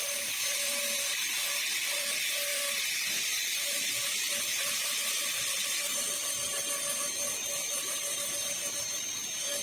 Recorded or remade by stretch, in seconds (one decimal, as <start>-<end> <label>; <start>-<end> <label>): 0.0-2.5 recorded; 2.5-6.0 remade; 6.0-9.6 recorded